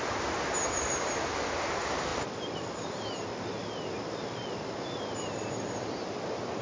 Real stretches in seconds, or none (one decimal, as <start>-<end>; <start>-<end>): 0.0-6.6